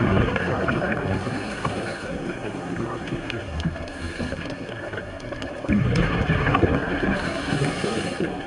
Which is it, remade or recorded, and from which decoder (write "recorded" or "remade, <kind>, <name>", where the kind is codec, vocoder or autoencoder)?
remade, codec, SNAC